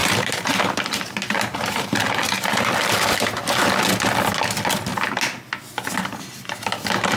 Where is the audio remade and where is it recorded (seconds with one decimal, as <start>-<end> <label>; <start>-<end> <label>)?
0.0-3.4 remade; 3.4-7.2 recorded